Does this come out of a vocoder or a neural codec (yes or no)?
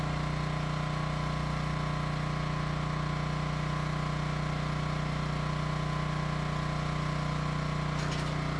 no